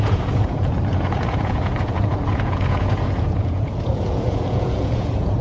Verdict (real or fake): fake